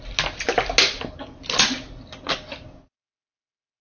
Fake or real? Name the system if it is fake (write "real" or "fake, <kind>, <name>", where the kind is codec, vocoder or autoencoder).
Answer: real